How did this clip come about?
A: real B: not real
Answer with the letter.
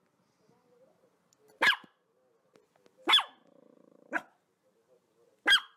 A